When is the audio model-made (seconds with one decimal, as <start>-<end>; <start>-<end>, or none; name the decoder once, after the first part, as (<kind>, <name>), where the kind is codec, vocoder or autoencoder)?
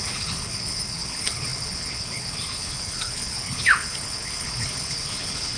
0.0-5.6 (codec, HILCodec)